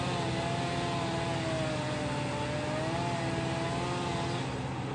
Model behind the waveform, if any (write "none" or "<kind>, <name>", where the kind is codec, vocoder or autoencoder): none